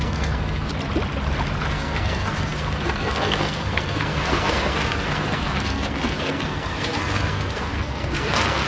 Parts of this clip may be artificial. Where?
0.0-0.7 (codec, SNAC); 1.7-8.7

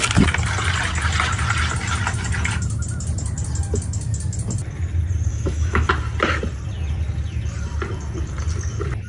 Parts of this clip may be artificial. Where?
5.3-5.9 (autoencoder, DAC-VAE)

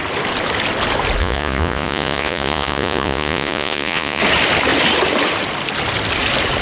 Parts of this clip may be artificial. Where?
1.2-4.2 (vocoder, Vocos)

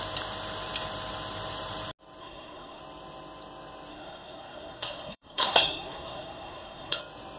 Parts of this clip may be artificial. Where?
2.2-2.8 (codec, SNAC); 3.9-7.0